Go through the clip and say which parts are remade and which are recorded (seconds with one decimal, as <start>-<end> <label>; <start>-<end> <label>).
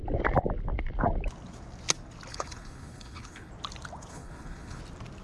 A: 0.0-2.3 recorded; 2.3-3.5 remade; 3.5-4.1 recorded; 4.1-4.8 remade; 4.8-5.2 recorded